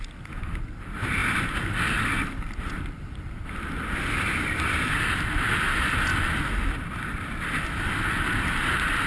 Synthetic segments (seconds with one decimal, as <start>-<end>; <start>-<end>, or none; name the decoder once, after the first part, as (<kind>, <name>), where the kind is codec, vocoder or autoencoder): none